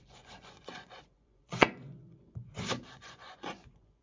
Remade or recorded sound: remade